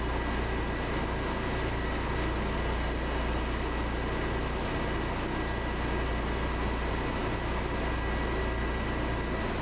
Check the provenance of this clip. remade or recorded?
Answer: recorded